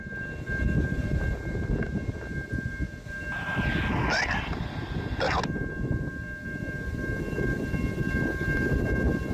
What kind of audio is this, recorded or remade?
recorded